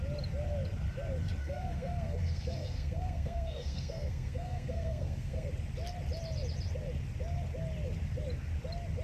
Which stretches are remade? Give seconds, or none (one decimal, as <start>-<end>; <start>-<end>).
1.4-5.5